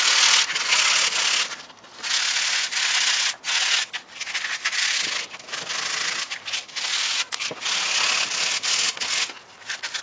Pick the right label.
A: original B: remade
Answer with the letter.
A